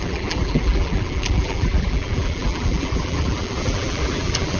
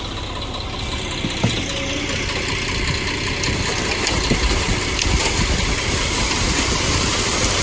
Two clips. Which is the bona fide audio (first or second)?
second